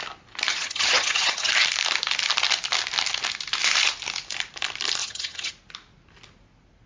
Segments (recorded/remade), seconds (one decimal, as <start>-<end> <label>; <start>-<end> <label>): 0.0-0.5 recorded; 0.5-1.5 remade; 1.5-5.0 recorded; 5.0-5.5 remade; 5.5-6.9 recorded